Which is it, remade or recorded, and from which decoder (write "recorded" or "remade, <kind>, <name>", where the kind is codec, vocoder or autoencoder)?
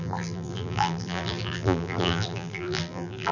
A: remade, vocoder, BigVGAN v2